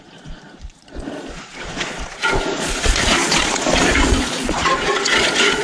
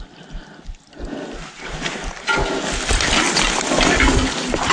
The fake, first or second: first